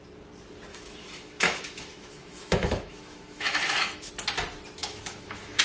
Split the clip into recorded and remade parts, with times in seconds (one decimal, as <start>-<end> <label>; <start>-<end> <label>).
0.0-0.7 recorded; 0.7-4.1 remade; 4.1-4.8 recorded; 4.8-5.6 remade